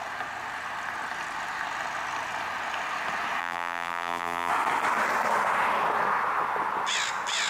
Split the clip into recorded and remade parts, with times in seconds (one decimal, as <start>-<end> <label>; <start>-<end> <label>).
0.0-3.4 recorded; 3.4-4.5 remade; 4.5-7.5 recorded

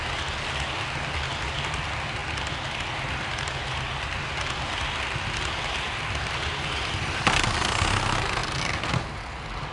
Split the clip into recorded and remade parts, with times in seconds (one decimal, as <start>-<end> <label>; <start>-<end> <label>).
0.0-9.7 recorded